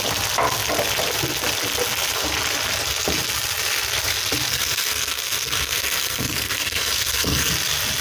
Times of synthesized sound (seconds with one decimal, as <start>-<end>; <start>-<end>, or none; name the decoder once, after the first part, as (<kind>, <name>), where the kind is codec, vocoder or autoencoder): 4.5-7.5 (codec, SNAC)